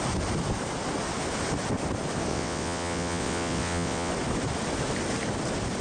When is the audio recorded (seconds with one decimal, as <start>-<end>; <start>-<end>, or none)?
0.0-2.3; 4.1-5.8